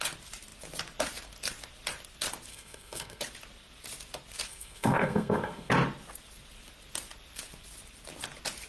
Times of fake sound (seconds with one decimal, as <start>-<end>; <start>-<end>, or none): 2.5-3.2; 4.5-5.7